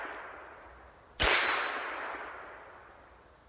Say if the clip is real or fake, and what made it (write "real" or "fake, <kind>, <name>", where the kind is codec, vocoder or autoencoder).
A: real